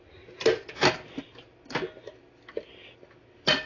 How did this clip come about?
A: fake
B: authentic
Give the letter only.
B